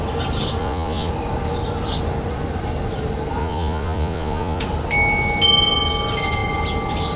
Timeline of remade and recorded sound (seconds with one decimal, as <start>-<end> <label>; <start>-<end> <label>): 0.0-0.6 recorded; 0.6-1.1 remade; 1.1-3.4 recorded; 3.4-4.6 remade; 4.6-7.2 recorded